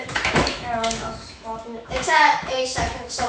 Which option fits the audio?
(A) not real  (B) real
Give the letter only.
A